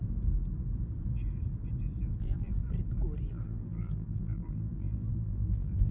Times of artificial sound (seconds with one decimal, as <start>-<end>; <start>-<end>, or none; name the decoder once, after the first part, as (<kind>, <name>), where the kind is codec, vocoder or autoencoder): 2.2-2.6 (vocoder, BigVGAN v2); 3.3-5.9